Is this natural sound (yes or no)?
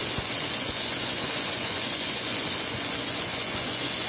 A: no